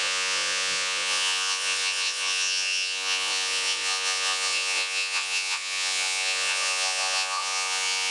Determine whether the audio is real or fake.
fake